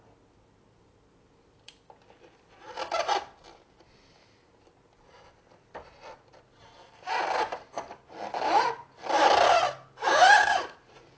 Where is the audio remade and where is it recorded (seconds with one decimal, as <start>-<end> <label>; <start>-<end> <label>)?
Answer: 0.0-10.4 recorded; 10.4-11.2 remade